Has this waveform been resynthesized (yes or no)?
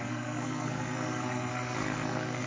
yes